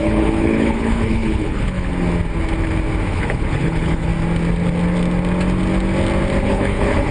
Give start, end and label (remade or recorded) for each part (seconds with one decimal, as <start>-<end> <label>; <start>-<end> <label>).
0.0-1.9 remade; 1.9-3.1 recorded; 3.1-4.1 remade; 4.1-6.4 recorded; 6.4-7.1 remade

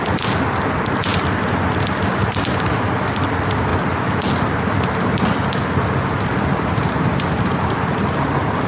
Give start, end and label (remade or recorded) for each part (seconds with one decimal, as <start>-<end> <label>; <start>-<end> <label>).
0.0-8.7 recorded

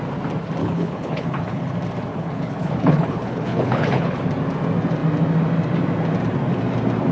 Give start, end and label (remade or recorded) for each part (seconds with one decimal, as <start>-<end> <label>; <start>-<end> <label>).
0.0-0.6 recorded; 0.6-1.7 remade; 1.7-2.1 recorded; 2.1-4.3 remade; 4.3-7.1 recorded

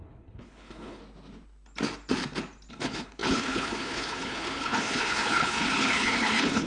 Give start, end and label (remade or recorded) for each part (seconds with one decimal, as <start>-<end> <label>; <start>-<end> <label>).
0.0-1.0 remade; 1.0-2.7 recorded; 2.7-6.7 remade